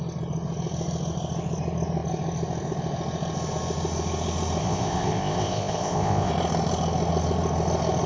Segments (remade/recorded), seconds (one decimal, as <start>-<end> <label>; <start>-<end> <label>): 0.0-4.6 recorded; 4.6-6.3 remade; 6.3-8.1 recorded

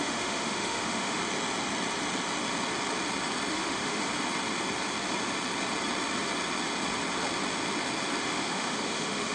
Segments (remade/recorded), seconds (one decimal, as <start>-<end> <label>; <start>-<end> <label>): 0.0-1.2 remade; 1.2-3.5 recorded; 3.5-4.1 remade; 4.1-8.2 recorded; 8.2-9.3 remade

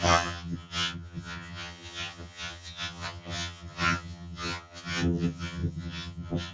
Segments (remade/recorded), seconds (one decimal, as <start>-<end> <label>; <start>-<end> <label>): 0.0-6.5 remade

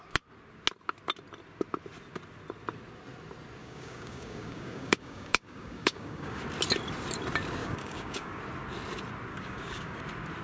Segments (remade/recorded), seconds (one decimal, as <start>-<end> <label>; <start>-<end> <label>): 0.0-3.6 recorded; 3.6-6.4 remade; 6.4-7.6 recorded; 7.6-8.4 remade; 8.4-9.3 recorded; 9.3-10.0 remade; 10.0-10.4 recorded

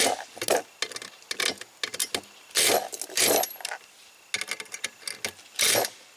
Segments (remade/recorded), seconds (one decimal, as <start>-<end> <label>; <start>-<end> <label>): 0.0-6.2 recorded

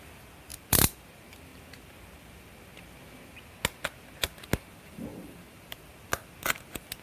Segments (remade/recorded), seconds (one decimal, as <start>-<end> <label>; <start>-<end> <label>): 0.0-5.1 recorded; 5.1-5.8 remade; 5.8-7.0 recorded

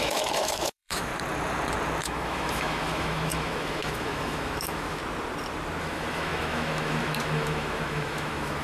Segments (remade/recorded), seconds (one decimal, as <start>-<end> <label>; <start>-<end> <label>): 0.0-1.1 remade; 1.1-2.0 recorded; 2.0-5.0 remade; 5.0-5.8 recorded; 5.8-8.6 remade

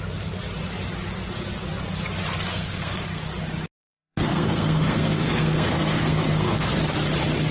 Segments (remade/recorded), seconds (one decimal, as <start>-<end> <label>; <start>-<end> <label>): 0.0-2.5 recorded; 2.5-3.2 remade; 3.2-3.8 recorded; 3.8-6.8 remade; 6.8-7.5 recorded